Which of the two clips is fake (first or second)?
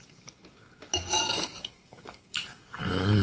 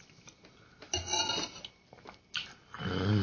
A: first